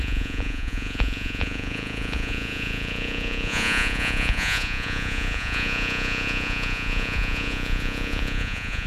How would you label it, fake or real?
fake